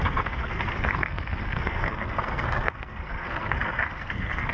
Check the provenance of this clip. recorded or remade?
remade